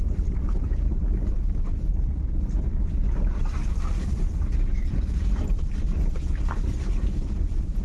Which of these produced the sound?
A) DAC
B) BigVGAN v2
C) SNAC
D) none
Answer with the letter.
B